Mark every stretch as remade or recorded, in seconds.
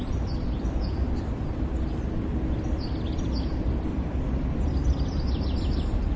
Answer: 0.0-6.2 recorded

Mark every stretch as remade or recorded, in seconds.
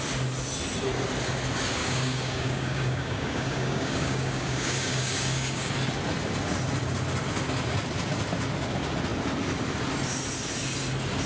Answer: 0.0-1.8 recorded; 1.8-5.7 remade; 5.7-11.3 recorded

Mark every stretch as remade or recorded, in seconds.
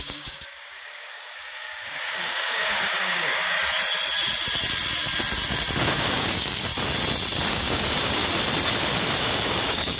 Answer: 0.0-3.6 remade; 3.6-5.9 recorded; 5.9-6.7 remade; 6.7-7.5 recorded; 7.5-8.2 remade; 8.2-9.2 recorded; 9.2-10.0 remade